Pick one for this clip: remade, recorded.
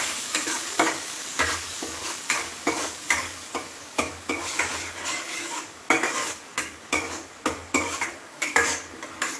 remade